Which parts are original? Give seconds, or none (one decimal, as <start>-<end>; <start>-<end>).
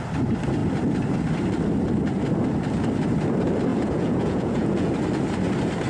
0.0-3.7; 4.9-5.9